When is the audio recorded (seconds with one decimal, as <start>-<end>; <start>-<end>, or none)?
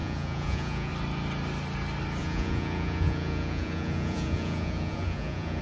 0.9-2.2